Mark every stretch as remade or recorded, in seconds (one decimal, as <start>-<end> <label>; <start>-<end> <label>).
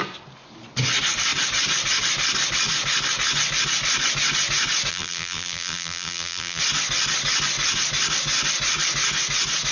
0.0-4.9 recorded; 4.9-6.6 remade; 6.6-9.7 recorded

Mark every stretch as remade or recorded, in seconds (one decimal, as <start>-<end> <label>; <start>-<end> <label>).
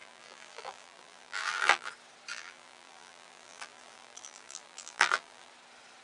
0.0-1.9 remade; 1.9-2.3 recorded; 2.3-5.5 remade; 5.5-6.0 recorded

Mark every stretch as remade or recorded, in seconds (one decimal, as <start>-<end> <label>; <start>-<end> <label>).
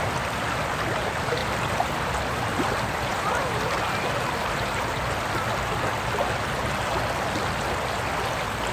0.0-3.1 recorded; 3.1-3.6 remade; 3.6-4.4 recorded; 4.4-5.0 remade; 5.0-8.7 recorded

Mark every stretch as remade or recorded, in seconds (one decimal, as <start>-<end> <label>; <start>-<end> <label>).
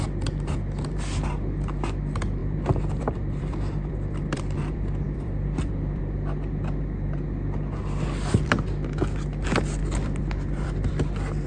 0.0-2.4 recorded; 2.4-6.0 remade; 6.0-9.8 recorded; 9.8-11.0 remade; 11.0-11.5 recorded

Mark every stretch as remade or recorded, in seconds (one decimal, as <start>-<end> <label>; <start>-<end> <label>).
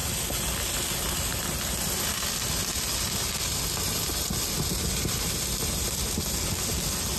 0.0-7.2 recorded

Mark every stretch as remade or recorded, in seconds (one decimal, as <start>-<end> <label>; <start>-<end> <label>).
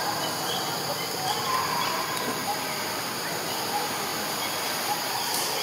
0.0-2.4 recorded; 2.4-3.4 remade; 3.4-4.1 recorded; 4.1-4.7 remade; 4.7-5.6 recorded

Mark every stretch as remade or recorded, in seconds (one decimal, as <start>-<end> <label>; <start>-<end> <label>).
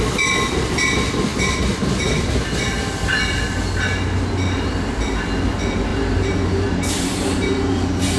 0.0-5.9 recorded; 5.9-8.2 remade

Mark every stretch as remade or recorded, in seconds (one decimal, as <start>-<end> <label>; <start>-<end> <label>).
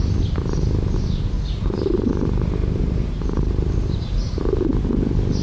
0.0-1.5 recorded; 1.5-2.1 remade; 2.1-2.6 recorded; 2.6-4.4 remade; 4.4-5.4 recorded